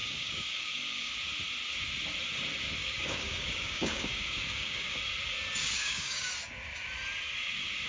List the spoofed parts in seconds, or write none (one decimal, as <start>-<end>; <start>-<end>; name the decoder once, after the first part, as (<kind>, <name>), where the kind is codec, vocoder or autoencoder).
0.0-1.1 (codec, DAC); 2.8-5.0; 5.6-6.3